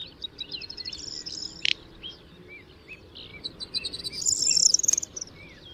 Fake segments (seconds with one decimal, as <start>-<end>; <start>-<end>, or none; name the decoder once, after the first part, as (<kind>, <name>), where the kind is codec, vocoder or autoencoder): none